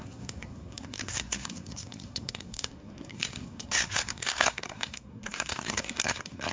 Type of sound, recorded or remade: remade